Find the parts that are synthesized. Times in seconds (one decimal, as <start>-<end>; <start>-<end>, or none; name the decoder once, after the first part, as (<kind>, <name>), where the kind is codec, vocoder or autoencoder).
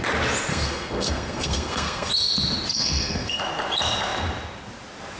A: 0.5-2.1 (codec, SNAC); 2.7-3.4